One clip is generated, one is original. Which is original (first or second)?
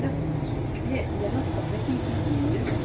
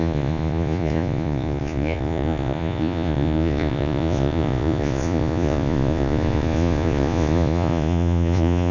first